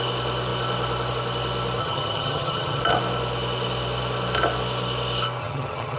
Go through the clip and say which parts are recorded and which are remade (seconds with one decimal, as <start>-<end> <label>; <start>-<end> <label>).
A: 0.0-1.8 recorded; 1.8-2.8 remade; 2.8-5.4 recorded; 5.4-6.0 remade